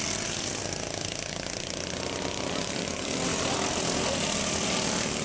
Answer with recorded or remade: recorded